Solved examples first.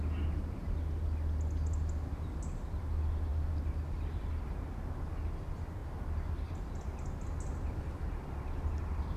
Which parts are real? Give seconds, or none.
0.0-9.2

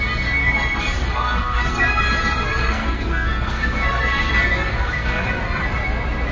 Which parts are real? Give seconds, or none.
0.0-0.4; 2.0-2.5; 4.3-4.7; 5.3-6.3

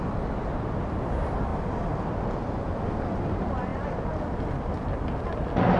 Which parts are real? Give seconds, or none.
0.0-5.8

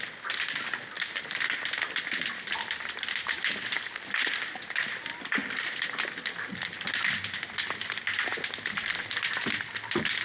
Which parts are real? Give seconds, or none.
0.0-10.2

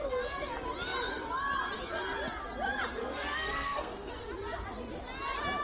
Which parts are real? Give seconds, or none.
0.0-3.0; 4.1-5.6